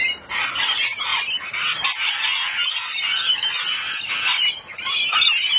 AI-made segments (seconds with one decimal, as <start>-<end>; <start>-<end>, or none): none